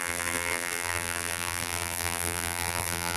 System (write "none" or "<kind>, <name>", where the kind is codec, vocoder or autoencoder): vocoder, BigVGAN v2